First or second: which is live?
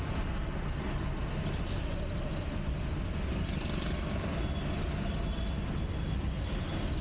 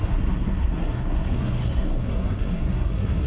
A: first